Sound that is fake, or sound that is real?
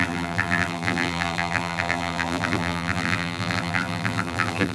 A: fake